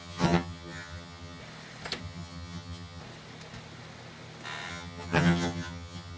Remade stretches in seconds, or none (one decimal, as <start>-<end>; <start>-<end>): 0.0-1.4; 2.0-3.0; 4.7-6.2

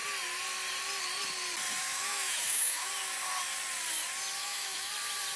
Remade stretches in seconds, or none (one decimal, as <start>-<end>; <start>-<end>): 1.8-2.9; 4.4-4.9

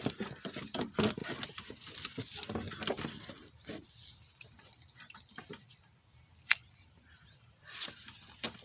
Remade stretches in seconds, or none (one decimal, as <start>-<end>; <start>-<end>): 0.0-1.2; 3.3-8.6

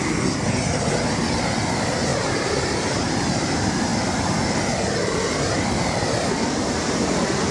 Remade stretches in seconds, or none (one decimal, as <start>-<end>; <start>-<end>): 2.1-3.0

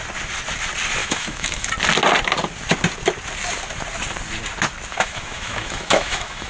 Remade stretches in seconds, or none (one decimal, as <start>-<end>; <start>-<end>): 1.0-1.7; 4.9-6.5

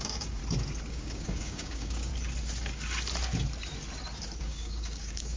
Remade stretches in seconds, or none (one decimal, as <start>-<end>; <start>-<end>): 0.0-0.4; 0.9-2.1; 4.4-5.4